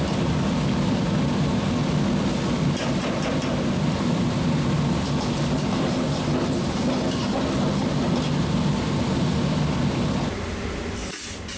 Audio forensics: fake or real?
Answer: real